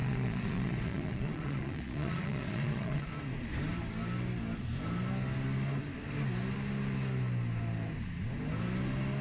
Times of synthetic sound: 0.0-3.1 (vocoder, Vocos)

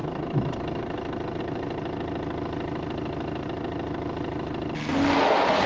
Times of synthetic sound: none